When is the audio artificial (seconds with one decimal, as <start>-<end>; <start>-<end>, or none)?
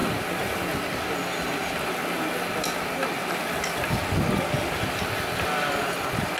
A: none